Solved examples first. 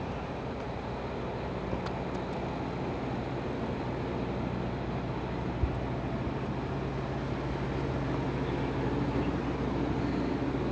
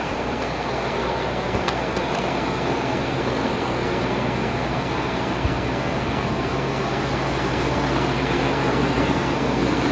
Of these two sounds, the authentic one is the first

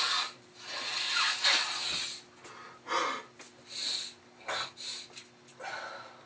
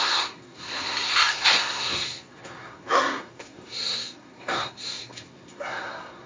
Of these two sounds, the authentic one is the first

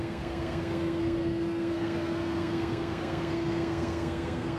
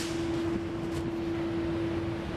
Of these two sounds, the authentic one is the second